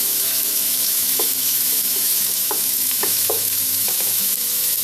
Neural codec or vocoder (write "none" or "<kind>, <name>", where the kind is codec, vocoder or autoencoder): autoencoder, DAC-VAE